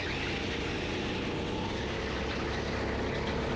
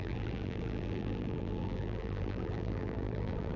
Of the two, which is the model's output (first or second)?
second